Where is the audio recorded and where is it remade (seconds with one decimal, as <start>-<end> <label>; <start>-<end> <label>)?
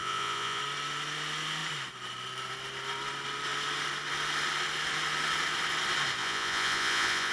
0.0-0.6 remade; 0.6-6.2 recorded; 6.2-7.3 remade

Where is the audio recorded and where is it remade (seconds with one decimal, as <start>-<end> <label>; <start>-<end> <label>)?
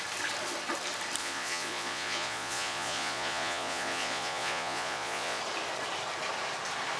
0.0-1.2 recorded; 1.2-5.4 remade; 5.4-7.0 recorded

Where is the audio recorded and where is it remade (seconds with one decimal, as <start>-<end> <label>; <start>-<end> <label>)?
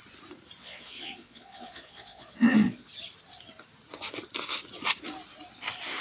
0.0-0.6 recorded; 0.6-2.9 remade; 2.9-6.0 recorded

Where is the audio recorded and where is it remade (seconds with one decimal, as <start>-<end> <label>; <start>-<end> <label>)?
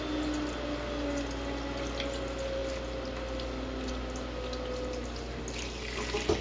0.0-6.4 recorded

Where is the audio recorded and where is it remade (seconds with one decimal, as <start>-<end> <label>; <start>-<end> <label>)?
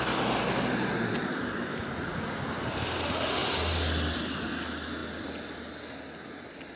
0.0-1.7 recorded; 1.7-2.4 remade; 2.4-6.8 recorded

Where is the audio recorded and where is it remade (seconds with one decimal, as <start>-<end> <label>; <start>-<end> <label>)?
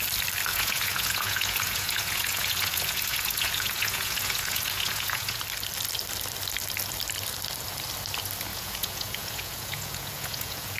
0.0-0.5 recorded; 0.5-5.4 remade; 5.4-8.5 recorded; 8.5-10.8 remade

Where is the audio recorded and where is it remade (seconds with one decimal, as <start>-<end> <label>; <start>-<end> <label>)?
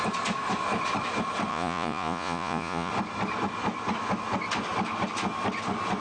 0.0-1.5 recorded; 1.5-2.9 remade; 2.9-6.0 recorded